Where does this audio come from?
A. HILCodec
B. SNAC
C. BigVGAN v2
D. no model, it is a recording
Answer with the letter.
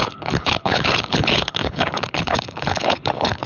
A